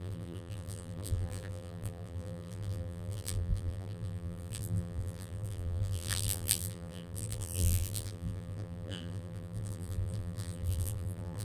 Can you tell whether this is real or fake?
fake